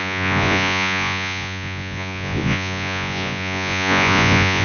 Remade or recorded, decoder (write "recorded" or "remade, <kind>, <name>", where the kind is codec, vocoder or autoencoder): remade, vocoder, Vocos